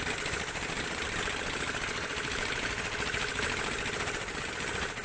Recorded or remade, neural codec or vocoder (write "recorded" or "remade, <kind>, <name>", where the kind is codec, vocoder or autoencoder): recorded